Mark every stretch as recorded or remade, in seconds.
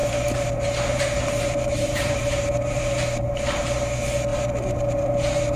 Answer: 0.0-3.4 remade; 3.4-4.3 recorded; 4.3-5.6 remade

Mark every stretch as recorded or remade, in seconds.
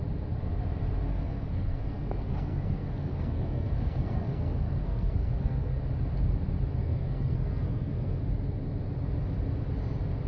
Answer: 0.0-1.1 recorded; 1.1-5.8 remade; 5.8-6.8 recorded; 6.8-8.2 remade; 8.2-10.3 recorded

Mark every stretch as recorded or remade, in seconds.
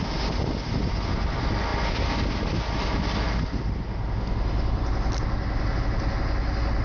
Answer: 0.0-6.8 recorded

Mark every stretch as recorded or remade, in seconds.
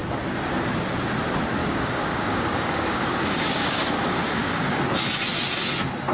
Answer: 0.0-1.6 recorded; 1.6-4.8 remade; 4.8-6.1 recorded